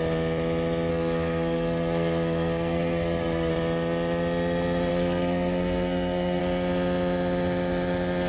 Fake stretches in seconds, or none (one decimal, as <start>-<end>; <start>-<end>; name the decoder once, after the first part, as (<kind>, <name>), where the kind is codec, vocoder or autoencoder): 0.9-3.5 (codec, SNAC); 4.9-6.4